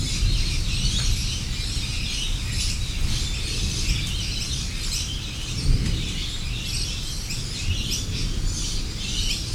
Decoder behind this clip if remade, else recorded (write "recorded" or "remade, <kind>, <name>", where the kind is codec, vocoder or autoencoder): recorded